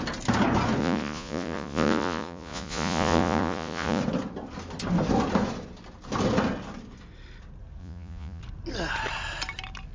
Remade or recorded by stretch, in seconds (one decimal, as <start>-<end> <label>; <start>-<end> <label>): 0.0-0.8 recorded; 0.8-4.0 remade; 4.0-7.8 recorded; 7.8-8.4 remade; 8.4-9.9 recorded